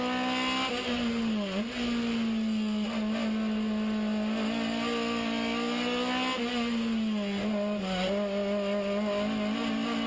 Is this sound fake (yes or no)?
no